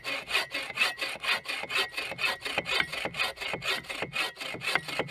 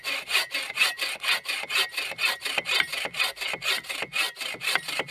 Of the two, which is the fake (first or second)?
second